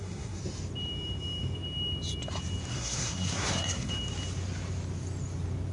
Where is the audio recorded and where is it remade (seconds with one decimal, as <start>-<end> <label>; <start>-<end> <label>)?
0.0-0.4 remade; 0.4-2.7 recorded; 2.7-3.9 remade; 3.9-5.7 recorded